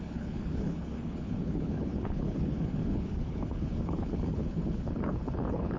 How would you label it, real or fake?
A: fake